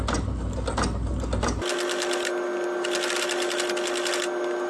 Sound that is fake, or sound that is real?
real